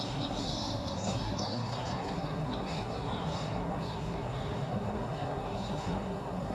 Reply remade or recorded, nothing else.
remade